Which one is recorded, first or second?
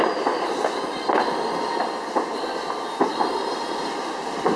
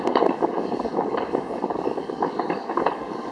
first